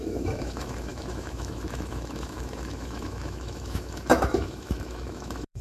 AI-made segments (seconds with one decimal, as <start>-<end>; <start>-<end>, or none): 0.0-5.6